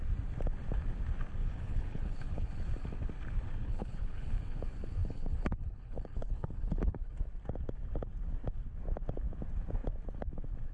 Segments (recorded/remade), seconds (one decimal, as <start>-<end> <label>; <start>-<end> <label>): 0.0-1.4 recorded; 1.4-2.5 remade; 2.5-3.6 recorded; 3.6-4.6 remade; 4.6-5.0 recorded; 5.0-7.1 remade; 7.1-10.7 recorded